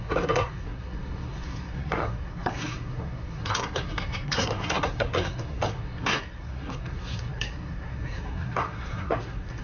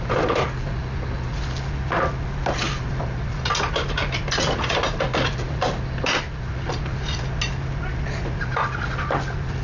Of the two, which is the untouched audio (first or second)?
second